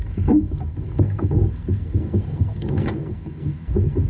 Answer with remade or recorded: remade